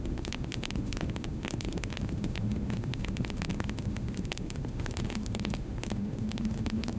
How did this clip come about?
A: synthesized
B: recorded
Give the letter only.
A